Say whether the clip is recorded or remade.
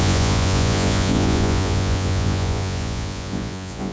remade